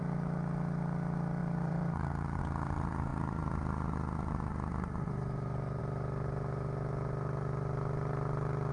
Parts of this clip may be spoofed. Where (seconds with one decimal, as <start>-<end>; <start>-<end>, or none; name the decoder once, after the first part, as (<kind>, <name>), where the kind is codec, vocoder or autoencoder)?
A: 1.4-2.4 (vocoder, BigVGAN v2)